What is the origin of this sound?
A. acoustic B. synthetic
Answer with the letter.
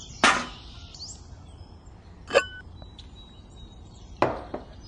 A